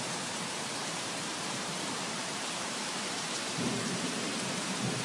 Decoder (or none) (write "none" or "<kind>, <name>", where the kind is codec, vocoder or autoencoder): vocoder, BigVGAN v2